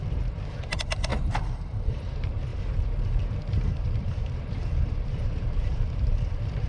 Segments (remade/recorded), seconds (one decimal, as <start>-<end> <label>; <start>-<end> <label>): 0.0-6.7 remade